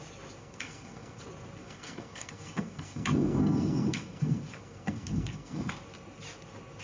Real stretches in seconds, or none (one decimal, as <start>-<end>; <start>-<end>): 0.0-0.4; 1.2-1.6; 5.7-6.8